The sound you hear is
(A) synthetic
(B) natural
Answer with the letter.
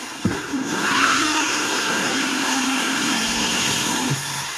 A